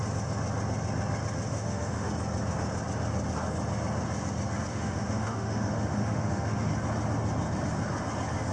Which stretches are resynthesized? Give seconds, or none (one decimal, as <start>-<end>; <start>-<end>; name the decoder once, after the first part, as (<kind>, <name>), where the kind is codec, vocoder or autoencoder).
1.5-2.1 (autoencoder, DAC-VAE); 4.7-6.7